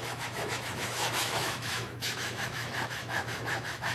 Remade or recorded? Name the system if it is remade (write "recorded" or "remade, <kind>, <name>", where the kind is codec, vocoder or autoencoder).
remade, autoencoder, DAC-VAE